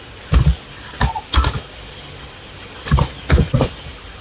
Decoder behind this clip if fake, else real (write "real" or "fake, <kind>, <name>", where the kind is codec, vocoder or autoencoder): real